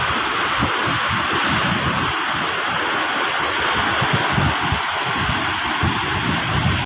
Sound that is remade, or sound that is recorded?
recorded